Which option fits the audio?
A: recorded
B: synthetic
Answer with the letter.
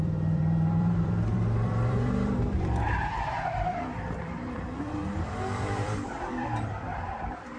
B